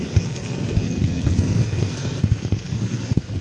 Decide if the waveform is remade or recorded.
remade